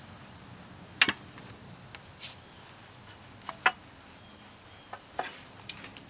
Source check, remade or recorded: recorded